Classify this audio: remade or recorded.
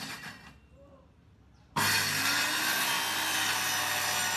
recorded